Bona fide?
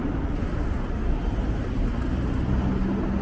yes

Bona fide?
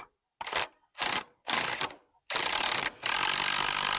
yes